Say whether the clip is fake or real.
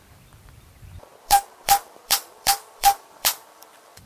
fake